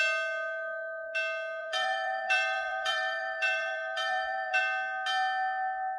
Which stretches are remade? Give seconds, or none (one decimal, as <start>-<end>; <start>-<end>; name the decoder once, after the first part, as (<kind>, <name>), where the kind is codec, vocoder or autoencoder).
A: 1.6-4.6 (vocoder, BigVGAN v2)